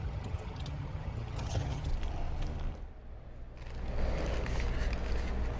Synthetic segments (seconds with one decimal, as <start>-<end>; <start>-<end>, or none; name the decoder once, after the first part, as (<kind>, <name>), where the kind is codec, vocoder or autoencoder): 0.0-1.9 (vocoder, HiFi-GAN)